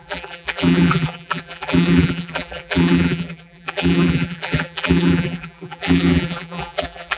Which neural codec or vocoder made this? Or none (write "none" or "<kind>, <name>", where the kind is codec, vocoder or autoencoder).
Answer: vocoder, BigVGAN v2